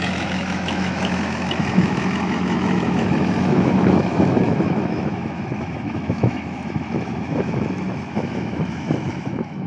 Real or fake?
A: fake